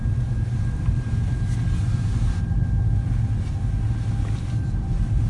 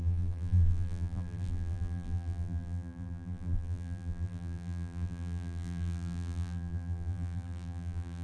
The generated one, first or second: second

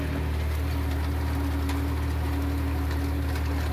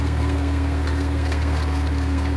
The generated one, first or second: second